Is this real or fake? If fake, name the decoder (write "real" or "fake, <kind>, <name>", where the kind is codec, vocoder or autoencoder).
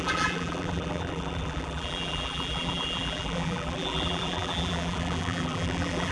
fake, vocoder, BigVGAN v2